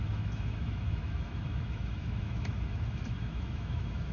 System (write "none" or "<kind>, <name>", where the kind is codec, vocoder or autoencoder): autoencoder, DAC-VAE